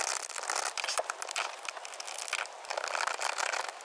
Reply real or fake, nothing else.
real